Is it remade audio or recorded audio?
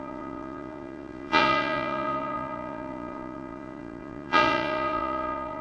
remade